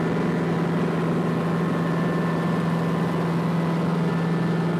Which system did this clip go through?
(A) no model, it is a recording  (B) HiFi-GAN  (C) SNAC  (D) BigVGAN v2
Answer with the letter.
A